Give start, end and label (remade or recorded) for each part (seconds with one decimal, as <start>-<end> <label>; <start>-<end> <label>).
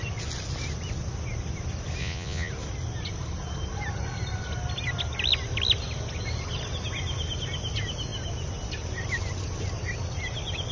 0.0-2.0 recorded; 2.0-2.5 remade; 2.5-10.7 recorded